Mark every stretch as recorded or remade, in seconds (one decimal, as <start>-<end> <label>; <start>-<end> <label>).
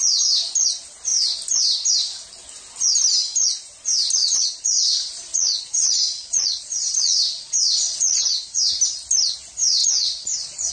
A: 0.0-4.2 recorded; 4.2-8.6 remade; 8.6-9.8 recorded; 9.8-10.7 remade